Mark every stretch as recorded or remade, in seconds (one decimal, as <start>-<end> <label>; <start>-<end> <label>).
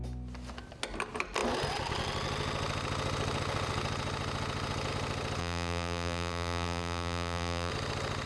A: 0.0-5.4 recorded; 5.4-7.7 remade; 7.7-8.3 recorded